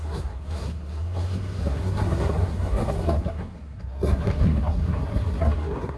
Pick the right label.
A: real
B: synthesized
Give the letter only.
B